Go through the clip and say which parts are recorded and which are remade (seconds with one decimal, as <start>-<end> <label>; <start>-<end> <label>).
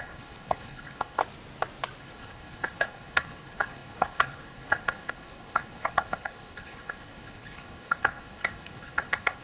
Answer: 0.0-1.2 remade; 1.2-2.0 recorded; 2.0-9.4 remade